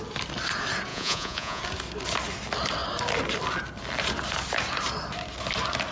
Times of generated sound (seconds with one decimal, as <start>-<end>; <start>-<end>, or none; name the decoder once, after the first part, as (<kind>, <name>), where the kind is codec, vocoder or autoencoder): 0.9-1.6 (vocoder, Vocos)